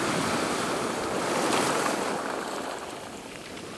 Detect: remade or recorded remade